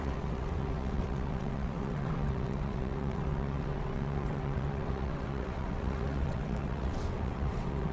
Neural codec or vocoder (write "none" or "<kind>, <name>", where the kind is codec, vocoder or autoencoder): vocoder, WaveNeXt